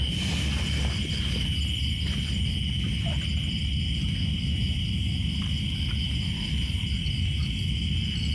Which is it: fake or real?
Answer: real